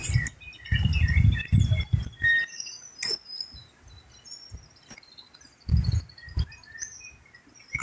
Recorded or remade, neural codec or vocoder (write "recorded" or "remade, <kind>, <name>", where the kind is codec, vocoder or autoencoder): recorded